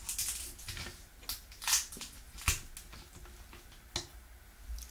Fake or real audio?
real